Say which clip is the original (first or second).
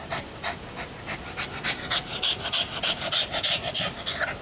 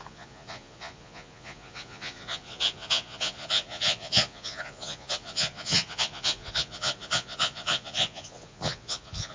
first